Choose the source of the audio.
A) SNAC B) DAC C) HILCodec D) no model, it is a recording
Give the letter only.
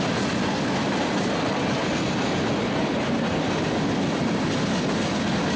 D